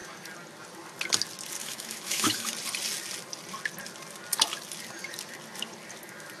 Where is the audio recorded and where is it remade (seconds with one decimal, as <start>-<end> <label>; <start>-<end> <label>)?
0.0-1.6 recorded; 1.6-2.5 remade; 2.5-6.4 recorded